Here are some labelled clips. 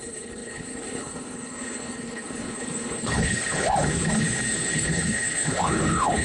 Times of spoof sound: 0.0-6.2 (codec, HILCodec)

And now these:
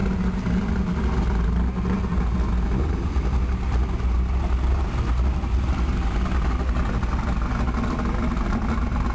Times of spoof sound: none

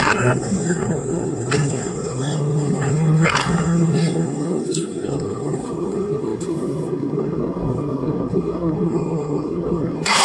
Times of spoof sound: 0.0-10.2 (codec, SNAC)

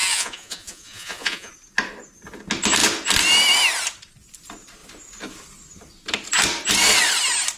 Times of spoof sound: 0.0-1.5 (vocoder, Vocos)

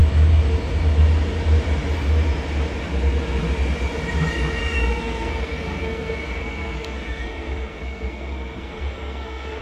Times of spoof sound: 4.6-9.6 (codec, SNAC)

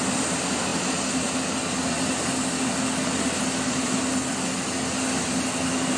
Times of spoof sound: none

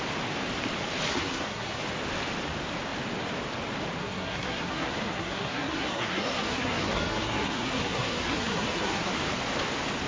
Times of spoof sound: 1.1-1.8 (codec, SNAC); 4.0-9.1

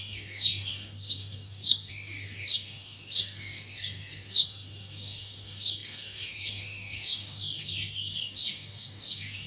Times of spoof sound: 0.0-9.5 (codec, DAC)